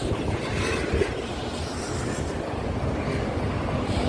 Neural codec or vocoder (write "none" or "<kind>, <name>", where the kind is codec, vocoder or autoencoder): none